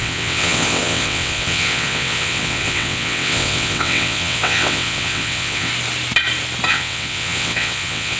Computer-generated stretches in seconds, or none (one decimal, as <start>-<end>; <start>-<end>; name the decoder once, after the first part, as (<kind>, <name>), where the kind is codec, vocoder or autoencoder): 0.0-5.7 (vocoder, WaveNeXt); 6.7-8.2